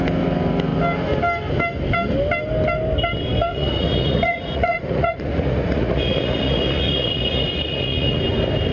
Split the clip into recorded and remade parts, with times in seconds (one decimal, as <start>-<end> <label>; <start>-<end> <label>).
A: 0.0-3.5 recorded; 3.5-8.2 remade; 8.2-8.7 recorded